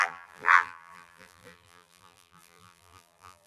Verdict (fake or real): fake